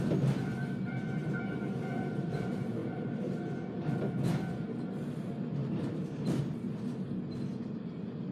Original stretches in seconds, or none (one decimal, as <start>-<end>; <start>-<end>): 0.0-0.5; 1.8-5.6; 6.4-8.3